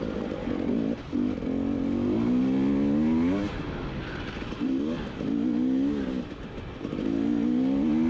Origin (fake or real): real